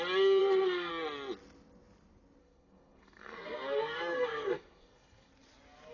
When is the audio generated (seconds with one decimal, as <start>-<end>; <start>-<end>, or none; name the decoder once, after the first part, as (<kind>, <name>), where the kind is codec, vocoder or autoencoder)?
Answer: 0.4-0.9 (codec, SNAC); 2.4-5.3